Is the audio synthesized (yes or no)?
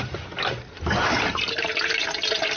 no